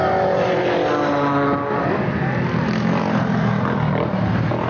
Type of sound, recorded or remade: recorded